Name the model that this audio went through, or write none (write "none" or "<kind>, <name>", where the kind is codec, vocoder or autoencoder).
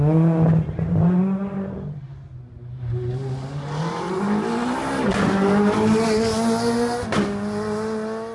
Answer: none